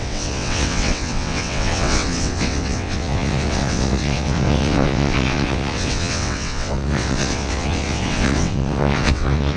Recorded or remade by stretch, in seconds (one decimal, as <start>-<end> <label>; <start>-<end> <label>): 0.0-9.6 remade